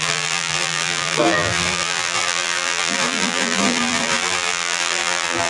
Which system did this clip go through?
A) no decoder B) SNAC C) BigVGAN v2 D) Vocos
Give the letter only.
C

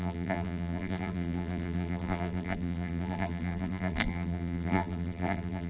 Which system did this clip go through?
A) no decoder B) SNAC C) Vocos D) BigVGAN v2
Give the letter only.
D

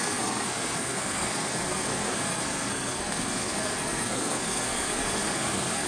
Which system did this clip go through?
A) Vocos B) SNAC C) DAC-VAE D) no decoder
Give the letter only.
B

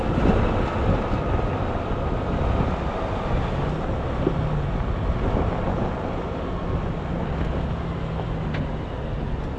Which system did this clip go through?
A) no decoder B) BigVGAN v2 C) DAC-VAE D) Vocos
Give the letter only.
A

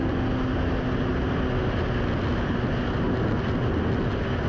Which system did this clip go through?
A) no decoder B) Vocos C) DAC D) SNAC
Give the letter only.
A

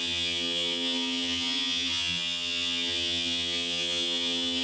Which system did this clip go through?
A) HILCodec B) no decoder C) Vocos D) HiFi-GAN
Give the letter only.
D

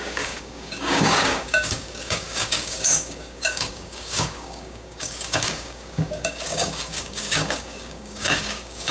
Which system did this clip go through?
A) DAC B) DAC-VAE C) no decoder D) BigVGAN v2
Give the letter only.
A